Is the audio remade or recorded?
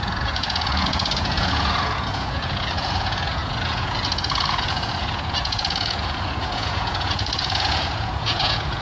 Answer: remade